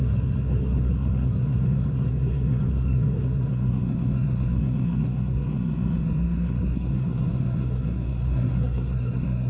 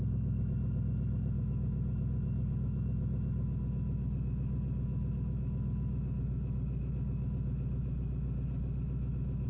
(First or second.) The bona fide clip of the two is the second